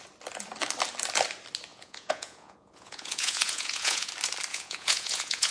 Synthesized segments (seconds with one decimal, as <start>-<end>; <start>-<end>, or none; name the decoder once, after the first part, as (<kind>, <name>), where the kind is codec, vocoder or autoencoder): 1.7-4.1 (vocoder, Vocos); 4.5-5.5